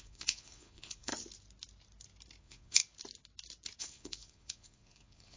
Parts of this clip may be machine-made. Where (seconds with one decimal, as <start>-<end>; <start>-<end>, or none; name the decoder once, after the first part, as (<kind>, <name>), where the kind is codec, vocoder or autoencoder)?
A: 0.0-1.1 (vocoder, Vocos); 2.4-2.8; 3.8-5.4